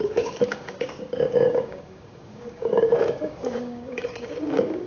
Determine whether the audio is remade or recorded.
remade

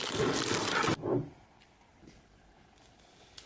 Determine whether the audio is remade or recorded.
recorded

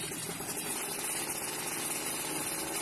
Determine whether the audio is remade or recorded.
recorded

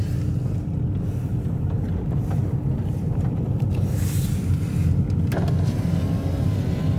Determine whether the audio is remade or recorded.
recorded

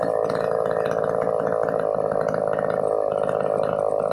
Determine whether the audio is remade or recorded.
remade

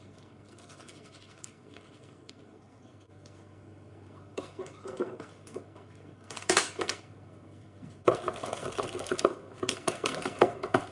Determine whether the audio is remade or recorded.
remade